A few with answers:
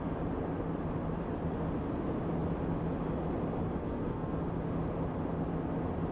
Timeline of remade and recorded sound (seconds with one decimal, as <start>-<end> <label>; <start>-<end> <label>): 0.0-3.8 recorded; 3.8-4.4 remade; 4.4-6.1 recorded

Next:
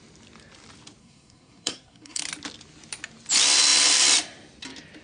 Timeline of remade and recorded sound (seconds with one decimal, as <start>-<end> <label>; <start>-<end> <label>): 0.0-1.0 recorded; 1.0-2.2 remade; 2.2-5.0 recorded

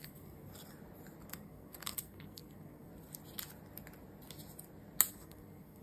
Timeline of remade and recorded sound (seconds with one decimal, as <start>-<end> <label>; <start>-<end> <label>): 0.0-0.5 remade; 0.5-1.3 recorded; 1.3-2.9 remade; 2.9-5.1 recorded; 5.1-5.8 remade